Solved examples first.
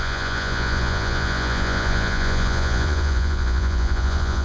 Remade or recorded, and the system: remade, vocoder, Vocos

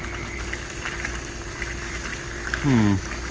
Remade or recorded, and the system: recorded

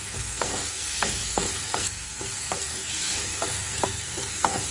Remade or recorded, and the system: remade, codec, SNAC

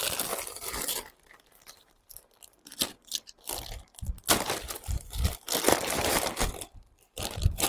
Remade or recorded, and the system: remade, vocoder, BigVGAN v2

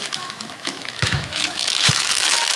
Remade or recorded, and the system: remade, autoencoder, DAC-VAE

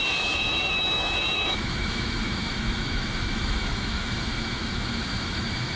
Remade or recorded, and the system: remade, autoencoder, DAC-VAE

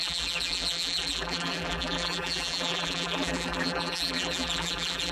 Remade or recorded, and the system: remade, vocoder, BigVGAN v2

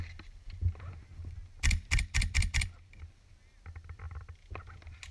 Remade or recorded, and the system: recorded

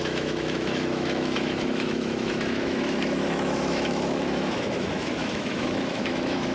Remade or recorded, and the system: remade, autoencoder, DAC-VAE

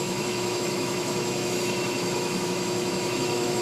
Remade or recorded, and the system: remade, autoencoder, DAC-VAE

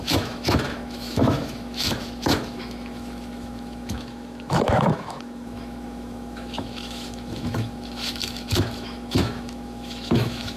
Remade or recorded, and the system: remade, autoencoder, DAC-VAE